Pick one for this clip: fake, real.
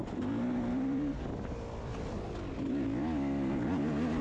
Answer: real